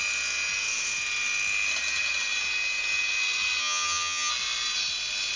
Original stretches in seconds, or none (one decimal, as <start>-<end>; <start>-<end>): 0.0-3.6; 4.3-5.4